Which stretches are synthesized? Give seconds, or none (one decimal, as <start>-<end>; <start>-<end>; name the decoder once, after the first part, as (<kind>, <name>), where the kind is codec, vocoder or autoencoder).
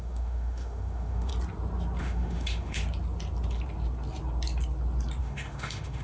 0.0-1.3 (autoencoder, DAC-VAE); 2.0-2.8; 5.2-6.0